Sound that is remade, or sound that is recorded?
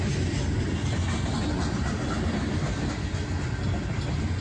recorded